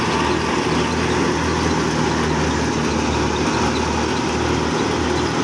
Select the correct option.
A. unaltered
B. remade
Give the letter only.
A